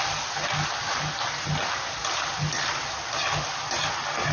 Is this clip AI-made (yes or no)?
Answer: no